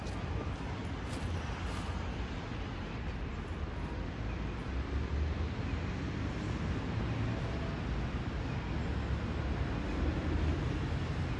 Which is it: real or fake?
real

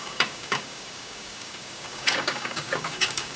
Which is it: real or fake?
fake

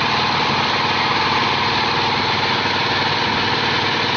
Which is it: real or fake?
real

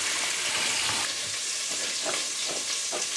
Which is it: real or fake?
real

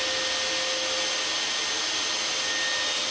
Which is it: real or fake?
real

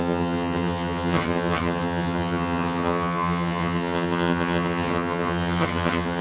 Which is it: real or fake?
fake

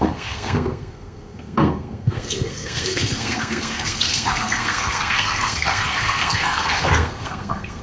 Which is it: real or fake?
fake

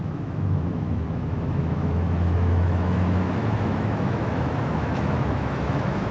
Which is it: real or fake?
fake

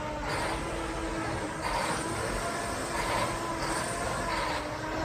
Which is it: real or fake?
real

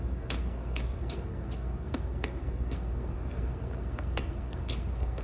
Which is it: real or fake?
fake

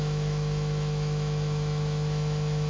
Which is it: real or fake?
fake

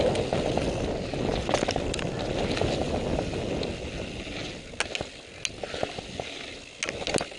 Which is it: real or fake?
real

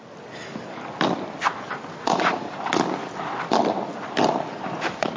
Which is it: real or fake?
real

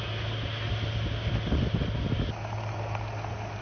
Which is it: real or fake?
real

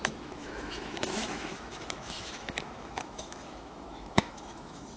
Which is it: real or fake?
fake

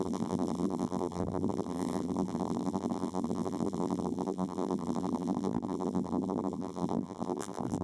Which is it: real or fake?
fake